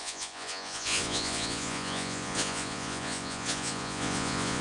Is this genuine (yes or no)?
no